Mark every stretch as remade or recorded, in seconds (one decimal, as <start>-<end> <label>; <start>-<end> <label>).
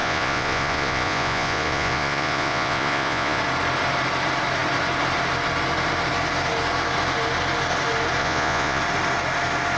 0.0-3.4 remade; 3.4-8.2 recorded; 8.2-8.8 remade; 8.8-9.8 recorded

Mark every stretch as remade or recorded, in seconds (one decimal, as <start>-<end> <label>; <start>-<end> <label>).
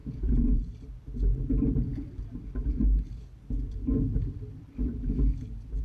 0.0-0.7 remade; 0.7-5.8 recorded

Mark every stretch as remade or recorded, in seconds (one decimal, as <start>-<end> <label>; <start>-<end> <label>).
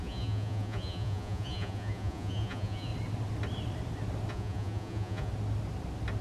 0.0-2.9 remade; 2.9-4.3 recorded; 4.3-5.3 remade; 5.3-6.2 recorded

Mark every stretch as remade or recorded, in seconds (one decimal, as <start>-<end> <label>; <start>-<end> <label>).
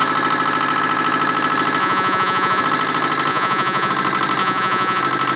0.0-1.8 recorded; 1.8-2.6 remade; 2.6-3.3 recorded; 3.3-3.9 remade; 3.9-4.4 recorded; 4.4-5.0 remade; 5.0-5.4 recorded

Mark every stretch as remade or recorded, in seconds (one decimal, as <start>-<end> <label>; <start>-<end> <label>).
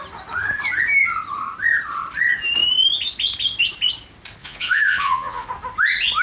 0.0-4.4 recorded; 4.4-5.5 remade; 5.5-6.2 recorded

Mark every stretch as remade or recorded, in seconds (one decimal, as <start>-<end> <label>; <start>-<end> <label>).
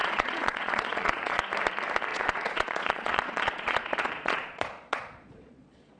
0.0-1.4 remade; 1.4-2.1 recorded; 2.1-6.0 remade